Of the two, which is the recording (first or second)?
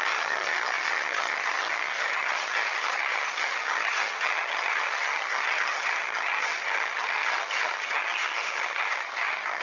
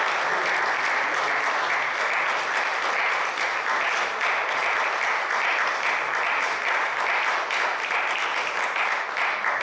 second